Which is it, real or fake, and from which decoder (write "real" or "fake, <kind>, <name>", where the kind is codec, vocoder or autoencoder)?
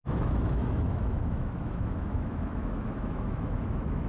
fake, autoencoder, DAC-VAE